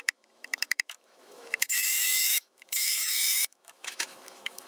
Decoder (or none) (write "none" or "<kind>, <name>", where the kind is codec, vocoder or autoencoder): autoencoder, DAC-VAE